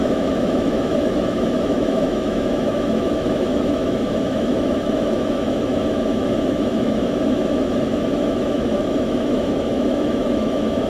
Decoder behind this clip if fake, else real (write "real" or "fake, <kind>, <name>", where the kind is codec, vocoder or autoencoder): fake, autoencoder, DAC-VAE